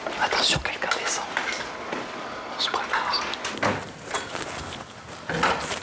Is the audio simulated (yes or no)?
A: no